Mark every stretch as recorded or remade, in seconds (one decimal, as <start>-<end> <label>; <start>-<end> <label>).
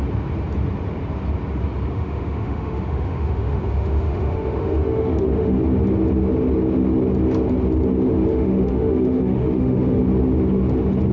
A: 0.0-1.9 recorded; 1.9-5.6 remade; 5.6-8.3 recorded; 8.3-10.0 remade; 10.0-11.1 recorded